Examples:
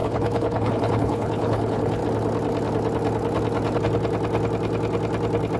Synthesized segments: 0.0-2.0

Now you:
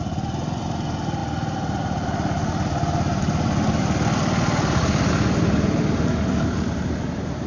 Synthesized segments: none

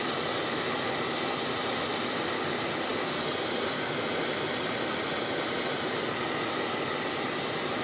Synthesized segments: none